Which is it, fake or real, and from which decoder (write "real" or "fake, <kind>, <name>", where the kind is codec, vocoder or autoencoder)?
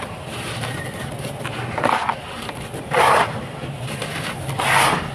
real